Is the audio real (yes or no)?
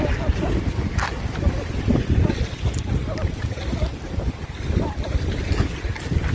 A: yes